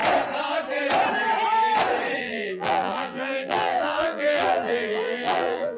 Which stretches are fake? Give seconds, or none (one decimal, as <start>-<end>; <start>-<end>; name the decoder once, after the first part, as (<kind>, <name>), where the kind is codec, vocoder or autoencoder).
2.2-5.8 (vocoder, BigVGAN v2)